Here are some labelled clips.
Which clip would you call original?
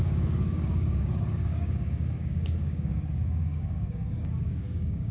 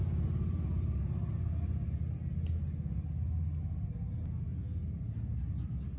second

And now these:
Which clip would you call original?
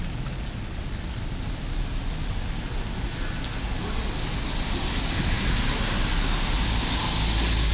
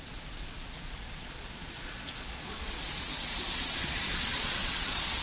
first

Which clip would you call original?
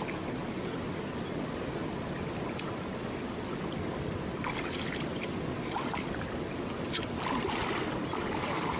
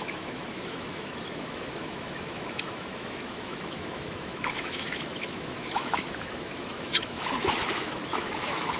first